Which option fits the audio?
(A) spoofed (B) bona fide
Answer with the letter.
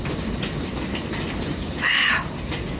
B